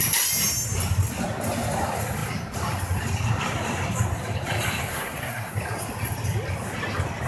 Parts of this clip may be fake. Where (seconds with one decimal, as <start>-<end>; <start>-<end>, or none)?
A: 4.9-5.5